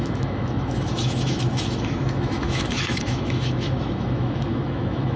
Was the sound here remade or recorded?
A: remade